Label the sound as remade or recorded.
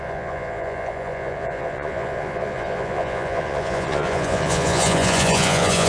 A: remade